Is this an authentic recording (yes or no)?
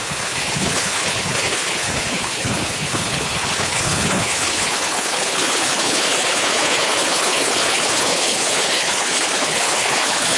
no